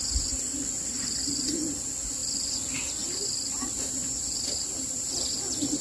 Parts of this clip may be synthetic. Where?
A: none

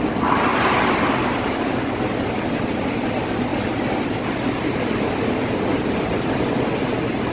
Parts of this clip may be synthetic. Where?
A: none

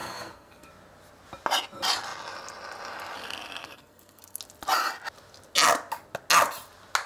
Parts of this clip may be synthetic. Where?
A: 0.0-0.7; 3.2-4.4

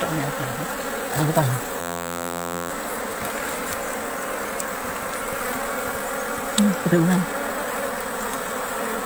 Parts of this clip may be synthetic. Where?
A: 1.8-2.7

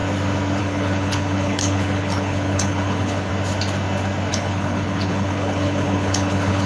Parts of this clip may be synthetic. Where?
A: 0.6-3.3; 4.3-6.7